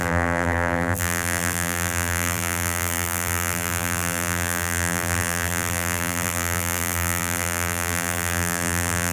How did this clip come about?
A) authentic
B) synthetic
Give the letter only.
B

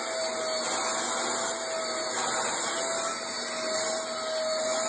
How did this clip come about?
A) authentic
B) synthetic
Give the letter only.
A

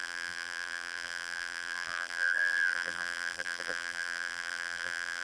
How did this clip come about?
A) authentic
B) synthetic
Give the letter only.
B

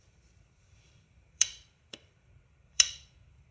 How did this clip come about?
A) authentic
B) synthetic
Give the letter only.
B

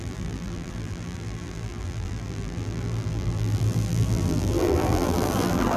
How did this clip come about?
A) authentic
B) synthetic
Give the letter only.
B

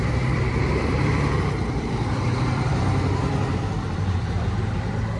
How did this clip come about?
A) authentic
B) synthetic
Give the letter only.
B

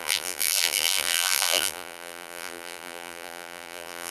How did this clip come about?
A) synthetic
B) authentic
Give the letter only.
A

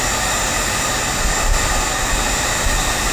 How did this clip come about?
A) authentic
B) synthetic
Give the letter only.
B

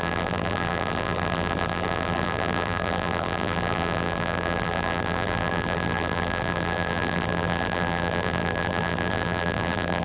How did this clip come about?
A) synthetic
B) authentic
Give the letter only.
A